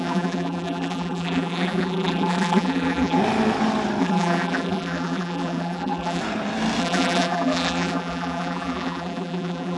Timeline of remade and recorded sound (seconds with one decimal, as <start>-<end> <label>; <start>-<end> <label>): 0.0-3.2 remade; 3.2-4.0 recorded; 4.0-6.2 remade; 6.2-6.8 recorded; 6.8-9.8 remade